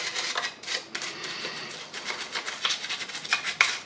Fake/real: real